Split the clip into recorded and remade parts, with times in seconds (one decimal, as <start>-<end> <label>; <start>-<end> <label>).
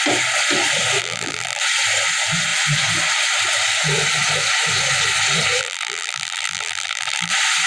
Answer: 0.0-1.0 recorded; 1.0-1.6 remade; 1.6-5.6 recorded; 5.6-7.3 remade; 7.3-7.7 recorded